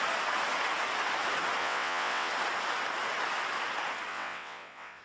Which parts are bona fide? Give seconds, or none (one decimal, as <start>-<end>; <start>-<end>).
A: 0.0-1.6; 2.3-4.1